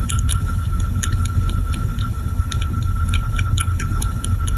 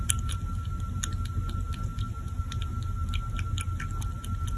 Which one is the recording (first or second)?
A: second